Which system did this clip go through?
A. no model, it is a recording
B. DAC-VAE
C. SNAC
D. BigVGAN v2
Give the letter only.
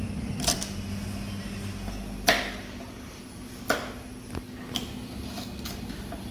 A